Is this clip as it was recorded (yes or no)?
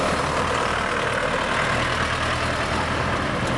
yes